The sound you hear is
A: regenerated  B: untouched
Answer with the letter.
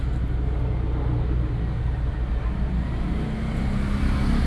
B